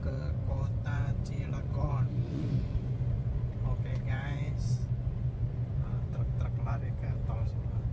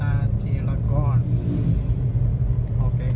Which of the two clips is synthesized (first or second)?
first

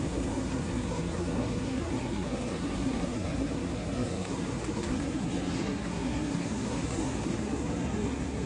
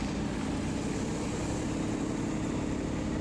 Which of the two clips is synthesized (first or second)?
first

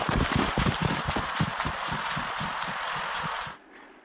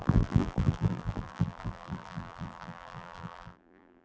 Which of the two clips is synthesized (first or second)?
second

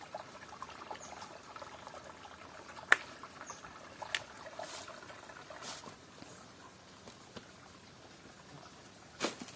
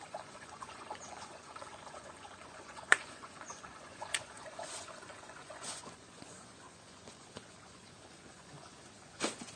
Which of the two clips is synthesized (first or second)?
second